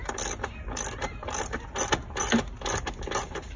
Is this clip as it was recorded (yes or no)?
yes